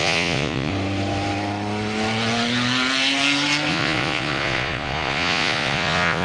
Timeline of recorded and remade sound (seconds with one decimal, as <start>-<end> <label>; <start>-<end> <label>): 0.0-0.7 remade; 0.7-3.7 recorded; 3.7-6.2 remade